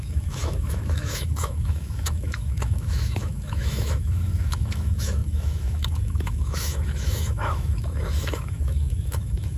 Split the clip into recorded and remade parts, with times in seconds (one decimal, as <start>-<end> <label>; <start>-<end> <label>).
0.0-9.6 remade